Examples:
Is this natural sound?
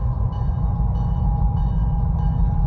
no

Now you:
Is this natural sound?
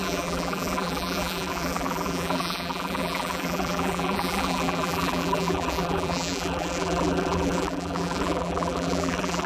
no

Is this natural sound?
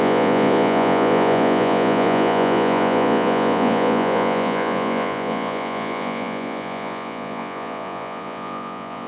no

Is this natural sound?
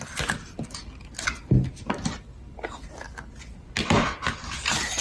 yes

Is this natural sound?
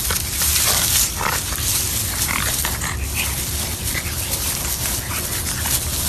yes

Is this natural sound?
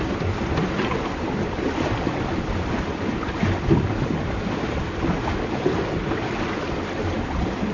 yes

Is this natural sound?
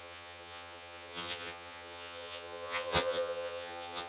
no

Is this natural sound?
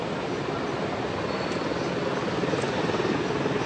yes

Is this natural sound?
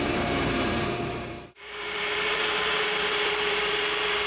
no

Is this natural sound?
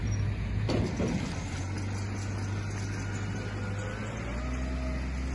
yes